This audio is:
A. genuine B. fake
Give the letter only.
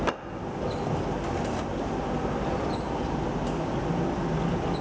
A